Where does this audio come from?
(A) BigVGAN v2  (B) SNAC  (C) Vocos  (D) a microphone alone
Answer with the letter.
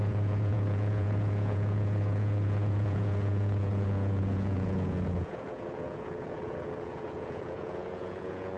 C